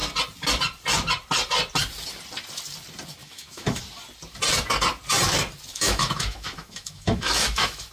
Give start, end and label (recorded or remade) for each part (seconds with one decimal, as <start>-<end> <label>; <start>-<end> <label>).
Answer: 0.0-3.2 recorded; 3.2-3.8 remade; 3.8-5.7 recorded; 5.7-7.9 remade